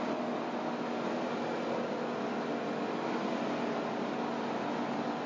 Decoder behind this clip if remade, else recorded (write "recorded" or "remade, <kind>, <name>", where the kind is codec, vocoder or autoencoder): recorded